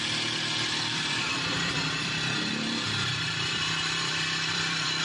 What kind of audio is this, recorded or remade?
remade